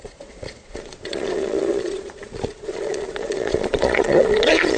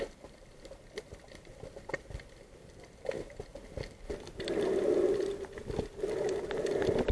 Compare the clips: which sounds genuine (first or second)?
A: second